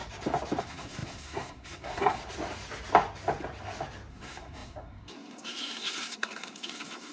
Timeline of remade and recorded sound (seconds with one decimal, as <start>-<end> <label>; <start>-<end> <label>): 0.0-0.6 recorded; 0.6-2.2 remade; 2.2-4.1 recorded; 4.1-7.1 remade